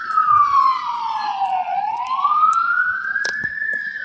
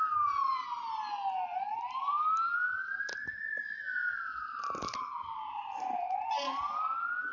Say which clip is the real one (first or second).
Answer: second